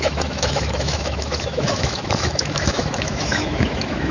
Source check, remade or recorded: remade